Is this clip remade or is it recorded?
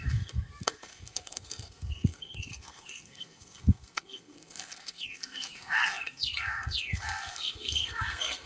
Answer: remade